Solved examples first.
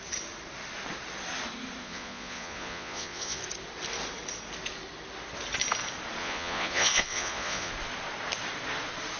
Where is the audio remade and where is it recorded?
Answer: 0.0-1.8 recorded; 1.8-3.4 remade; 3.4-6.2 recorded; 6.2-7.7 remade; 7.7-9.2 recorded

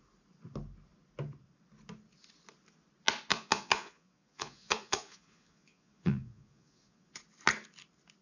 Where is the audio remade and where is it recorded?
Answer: 0.0-3.3 recorded; 3.3-7.1 remade; 7.1-8.2 recorded

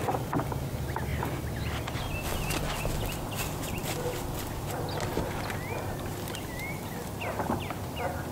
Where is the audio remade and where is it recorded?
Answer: 0.0-8.3 recorded

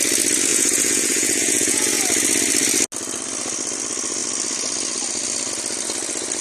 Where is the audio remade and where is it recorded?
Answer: 0.0-0.5 recorded; 0.5-2.0 remade; 2.0-6.4 recorded

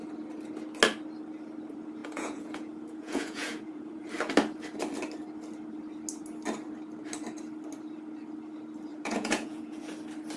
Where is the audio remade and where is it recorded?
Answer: 0.0-2.0 recorded; 2.0-4.1 remade; 4.1-8.9 recorded; 8.9-9.8 remade; 9.8-10.4 recorded

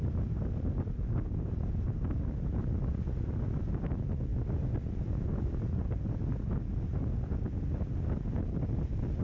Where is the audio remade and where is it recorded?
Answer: 0.0-9.2 recorded

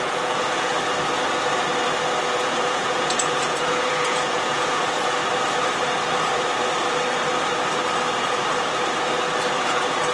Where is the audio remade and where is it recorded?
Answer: 0.0-0.7 remade; 0.7-2.2 recorded; 2.2-5.2 remade; 5.2-9.6 recorded; 9.6-10.1 remade

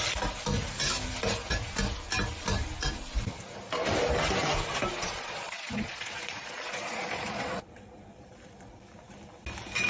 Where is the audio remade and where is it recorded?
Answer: 0.0-4.9 recorded; 4.9-8.3 remade; 8.3-9.9 recorded